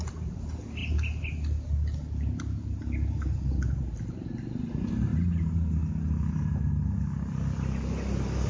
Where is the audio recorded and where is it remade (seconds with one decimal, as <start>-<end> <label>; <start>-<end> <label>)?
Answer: 0.0-8.5 recorded